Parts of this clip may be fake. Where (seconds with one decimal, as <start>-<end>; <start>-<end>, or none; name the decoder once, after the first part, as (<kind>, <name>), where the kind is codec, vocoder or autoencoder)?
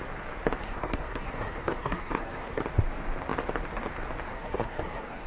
0.6-2.6 (codec, SNAC); 4.3-5.3